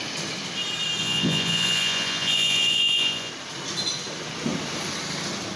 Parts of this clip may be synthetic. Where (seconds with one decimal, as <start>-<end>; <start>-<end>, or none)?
1.0-3.3